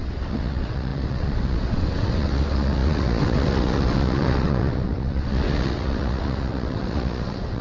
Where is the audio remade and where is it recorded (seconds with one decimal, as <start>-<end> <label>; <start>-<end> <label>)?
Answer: 0.0-7.6 remade